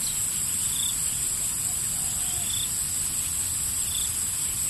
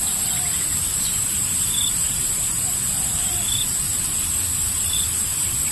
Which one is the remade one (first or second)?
second